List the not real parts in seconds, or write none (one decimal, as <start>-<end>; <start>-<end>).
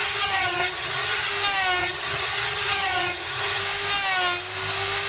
0.0-1.3; 1.8-3.6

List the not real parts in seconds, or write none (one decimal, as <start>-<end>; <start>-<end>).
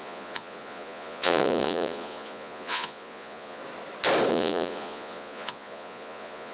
0.0-3.6; 4.3-6.5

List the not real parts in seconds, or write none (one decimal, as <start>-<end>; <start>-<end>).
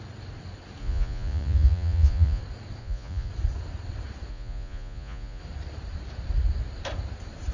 0.8-2.4; 2.8-3.3; 4.3-5.4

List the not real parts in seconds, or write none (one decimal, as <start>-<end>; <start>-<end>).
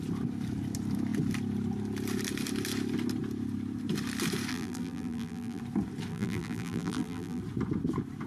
4.5-5.6; 6.1-7.4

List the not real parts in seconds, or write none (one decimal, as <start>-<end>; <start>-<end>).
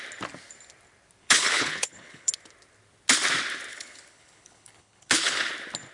1.2-2.3; 3.7-5.5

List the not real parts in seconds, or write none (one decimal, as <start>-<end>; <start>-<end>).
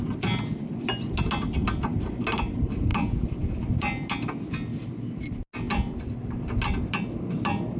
none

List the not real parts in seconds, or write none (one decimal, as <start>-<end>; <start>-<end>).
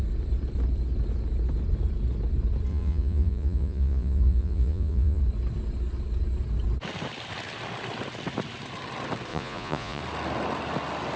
2.7-5.2; 9.3-10.0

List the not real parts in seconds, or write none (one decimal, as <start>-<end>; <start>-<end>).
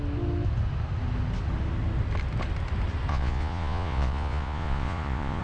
3.1-5.4